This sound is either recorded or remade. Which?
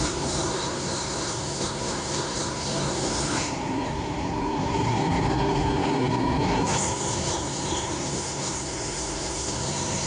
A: remade